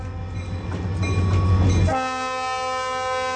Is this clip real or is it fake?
real